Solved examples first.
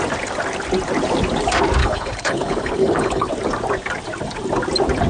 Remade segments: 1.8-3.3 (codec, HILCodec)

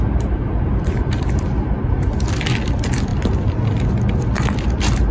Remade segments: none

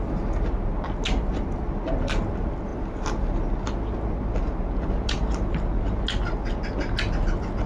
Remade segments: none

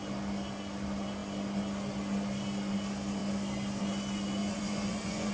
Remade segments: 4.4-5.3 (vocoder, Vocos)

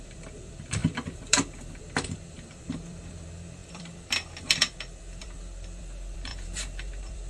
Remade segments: 0.0-7.3 (vocoder, BigVGAN v2)

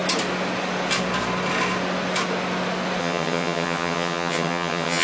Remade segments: 3.0-5.0 (vocoder, HiFi-GAN)